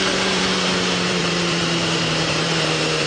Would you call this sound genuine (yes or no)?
no